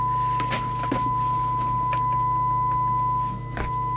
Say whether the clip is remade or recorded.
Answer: recorded